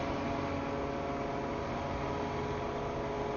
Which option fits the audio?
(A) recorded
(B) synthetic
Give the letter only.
A